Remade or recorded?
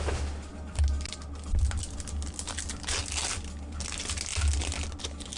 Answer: recorded